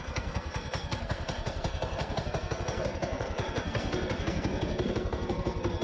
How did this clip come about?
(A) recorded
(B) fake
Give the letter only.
B